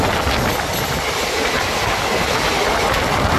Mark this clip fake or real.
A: real